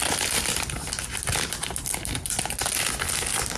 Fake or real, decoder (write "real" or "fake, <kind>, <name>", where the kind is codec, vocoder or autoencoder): real